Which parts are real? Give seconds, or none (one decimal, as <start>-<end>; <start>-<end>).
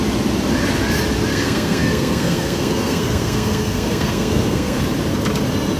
0.0-1.3; 4.8-5.8